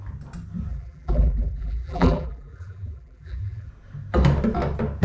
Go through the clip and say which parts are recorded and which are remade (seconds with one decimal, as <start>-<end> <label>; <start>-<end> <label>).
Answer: 0.0-0.7 recorded; 0.7-3.7 remade; 3.7-5.0 recorded